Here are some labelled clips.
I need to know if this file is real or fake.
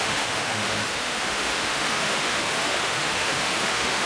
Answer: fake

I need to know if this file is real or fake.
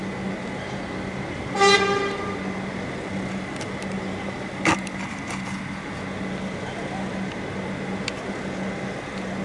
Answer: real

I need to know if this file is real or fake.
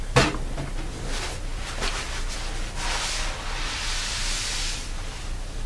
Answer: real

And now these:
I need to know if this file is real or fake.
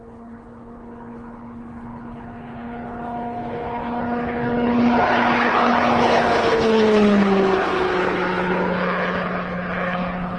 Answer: fake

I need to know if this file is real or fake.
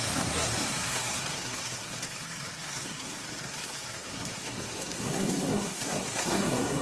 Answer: fake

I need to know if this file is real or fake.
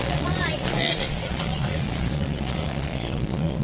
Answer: fake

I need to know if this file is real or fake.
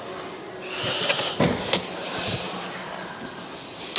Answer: real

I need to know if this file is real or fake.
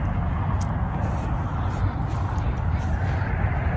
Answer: real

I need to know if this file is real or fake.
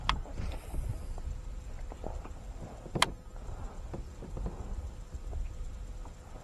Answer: real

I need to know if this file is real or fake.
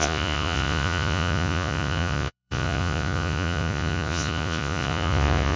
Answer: fake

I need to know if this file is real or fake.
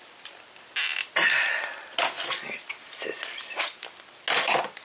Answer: real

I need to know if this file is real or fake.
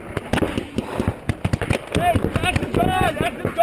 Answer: real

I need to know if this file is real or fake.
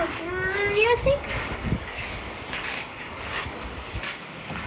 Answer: fake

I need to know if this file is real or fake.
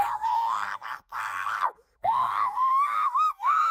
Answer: fake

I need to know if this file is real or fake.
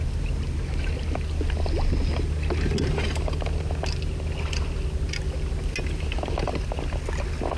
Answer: real